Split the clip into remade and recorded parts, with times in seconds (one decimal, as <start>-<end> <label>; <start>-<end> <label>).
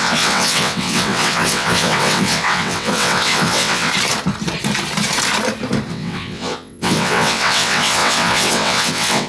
0.0-3.9 remade; 3.9-5.9 recorded; 5.9-9.3 remade